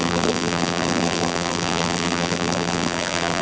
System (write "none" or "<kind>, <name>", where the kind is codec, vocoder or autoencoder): vocoder, BigVGAN v2